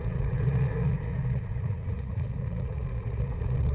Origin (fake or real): fake